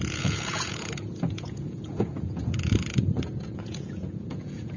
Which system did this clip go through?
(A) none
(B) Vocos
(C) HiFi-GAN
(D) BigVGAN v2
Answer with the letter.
B